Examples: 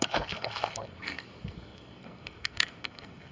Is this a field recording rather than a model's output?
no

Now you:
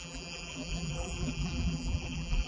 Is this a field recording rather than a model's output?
no